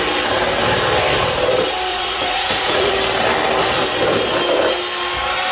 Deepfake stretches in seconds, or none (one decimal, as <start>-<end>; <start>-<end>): 1.9-2.9

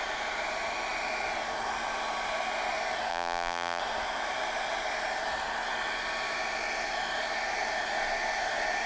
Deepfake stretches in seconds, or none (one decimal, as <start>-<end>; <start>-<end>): 3.1-3.8

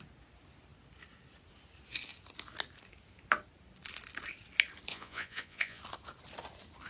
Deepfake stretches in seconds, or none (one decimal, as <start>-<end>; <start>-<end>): 4.9-5.8

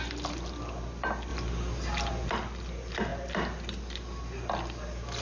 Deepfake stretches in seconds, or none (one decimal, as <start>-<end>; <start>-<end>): none

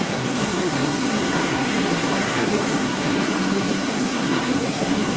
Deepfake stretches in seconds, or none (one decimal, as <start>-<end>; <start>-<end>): 0.0-5.2